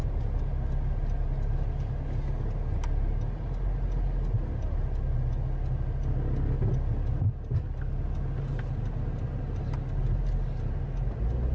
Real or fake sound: real